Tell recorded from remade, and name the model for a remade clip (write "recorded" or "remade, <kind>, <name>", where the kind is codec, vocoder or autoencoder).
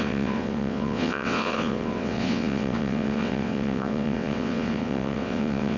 remade, vocoder, WaveNeXt